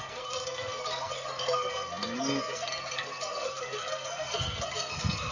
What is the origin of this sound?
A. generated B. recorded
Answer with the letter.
A